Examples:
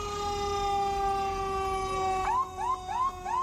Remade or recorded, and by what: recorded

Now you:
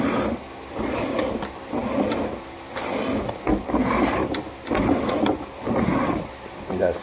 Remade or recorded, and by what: recorded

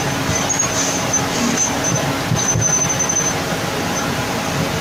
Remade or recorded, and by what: recorded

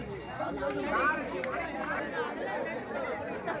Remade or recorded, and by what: recorded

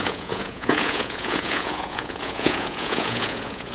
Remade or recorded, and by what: remade, vocoder, Vocos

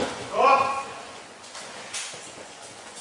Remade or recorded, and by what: remade, vocoder, Vocos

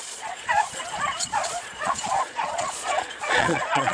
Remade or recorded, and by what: remade, vocoder, Vocos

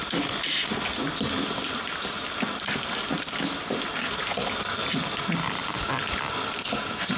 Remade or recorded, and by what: recorded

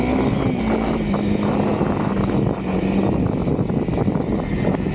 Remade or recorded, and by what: recorded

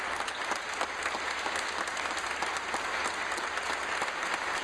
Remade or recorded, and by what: recorded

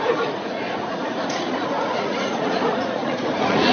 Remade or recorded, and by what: remade, vocoder, Vocos